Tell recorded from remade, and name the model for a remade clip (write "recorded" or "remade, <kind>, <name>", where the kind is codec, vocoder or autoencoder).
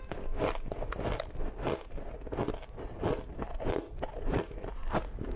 recorded